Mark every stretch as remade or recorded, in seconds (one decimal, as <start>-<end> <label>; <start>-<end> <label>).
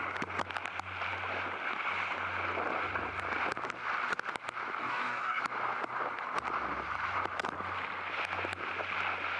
0.0-4.8 recorded; 4.8-5.4 remade; 5.4-9.4 recorded